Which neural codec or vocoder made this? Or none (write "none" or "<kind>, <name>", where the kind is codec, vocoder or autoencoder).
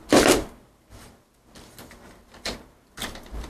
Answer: none